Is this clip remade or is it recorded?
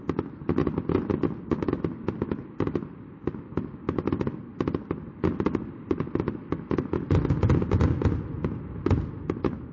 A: recorded